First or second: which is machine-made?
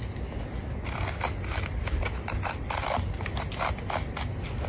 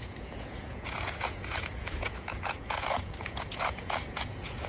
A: second